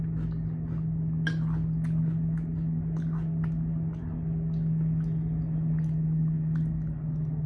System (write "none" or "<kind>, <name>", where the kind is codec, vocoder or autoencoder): none